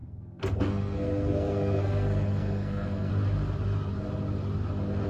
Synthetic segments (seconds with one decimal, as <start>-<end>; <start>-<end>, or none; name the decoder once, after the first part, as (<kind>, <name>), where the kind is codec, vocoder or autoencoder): 0.0-3.1 (codec, SNAC)